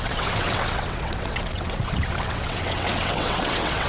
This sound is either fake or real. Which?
fake